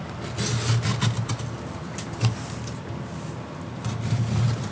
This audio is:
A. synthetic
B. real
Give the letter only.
B